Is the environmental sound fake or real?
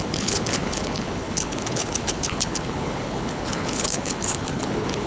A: fake